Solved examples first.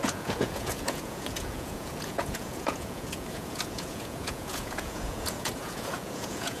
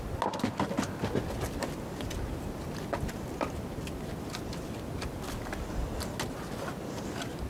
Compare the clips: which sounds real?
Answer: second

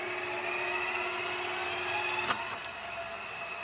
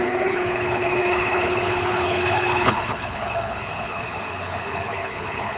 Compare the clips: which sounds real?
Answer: first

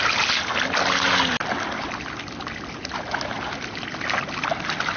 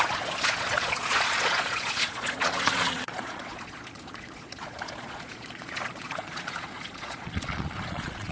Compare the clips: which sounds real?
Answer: first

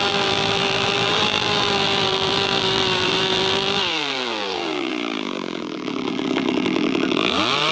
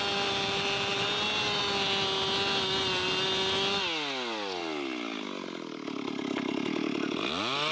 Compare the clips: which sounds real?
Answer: second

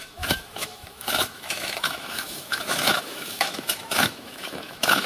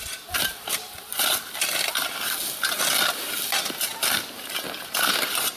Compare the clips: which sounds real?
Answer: second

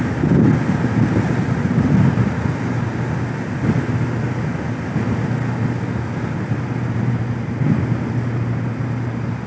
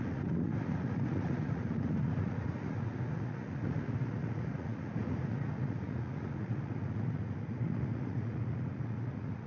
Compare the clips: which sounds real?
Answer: first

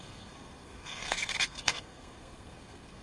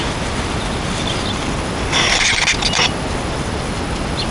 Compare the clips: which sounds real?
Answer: second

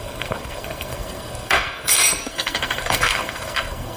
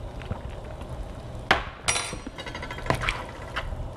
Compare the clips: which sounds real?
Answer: second